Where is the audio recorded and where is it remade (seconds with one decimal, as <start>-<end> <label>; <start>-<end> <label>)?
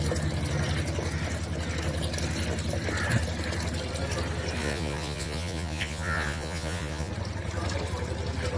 0.0-4.6 recorded; 4.6-7.1 remade; 7.1-8.6 recorded